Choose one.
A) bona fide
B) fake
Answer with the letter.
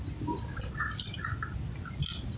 A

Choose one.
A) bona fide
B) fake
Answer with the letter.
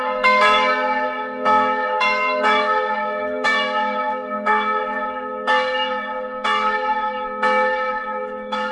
B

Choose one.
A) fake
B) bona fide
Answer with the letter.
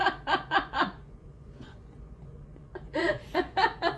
A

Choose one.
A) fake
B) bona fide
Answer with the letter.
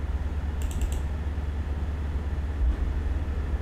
B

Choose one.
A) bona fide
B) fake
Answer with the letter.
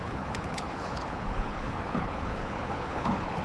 B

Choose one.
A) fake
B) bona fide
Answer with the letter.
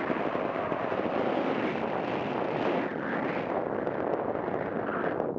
B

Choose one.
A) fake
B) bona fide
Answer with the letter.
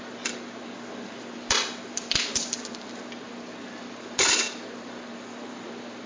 A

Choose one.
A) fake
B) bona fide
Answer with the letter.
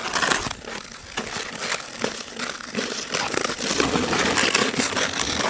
B